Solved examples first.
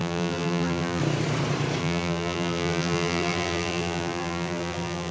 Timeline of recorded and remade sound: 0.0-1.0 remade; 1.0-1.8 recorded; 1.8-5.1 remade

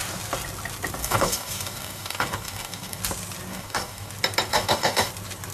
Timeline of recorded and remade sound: 0.0-1.0 recorded; 1.0-3.0 remade; 3.0-3.5 recorded; 3.5-4.1 remade; 4.1-4.5 recorded; 4.5-5.1 remade; 5.1-5.5 recorded